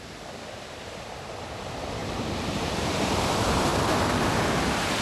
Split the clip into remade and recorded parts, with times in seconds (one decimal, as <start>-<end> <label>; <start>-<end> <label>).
0.0-2.0 recorded; 2.0-3.1 remade; 3.1-5.0 recorded